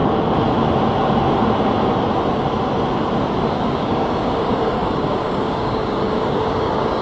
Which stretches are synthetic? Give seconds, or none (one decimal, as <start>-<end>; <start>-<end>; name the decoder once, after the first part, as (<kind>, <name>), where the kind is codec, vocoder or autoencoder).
3.5-7.0 (codec, DAC)